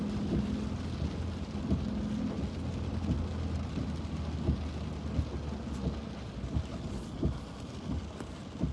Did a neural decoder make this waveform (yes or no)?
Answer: no